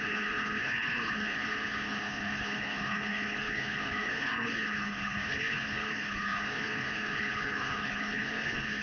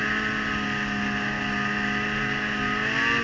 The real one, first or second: second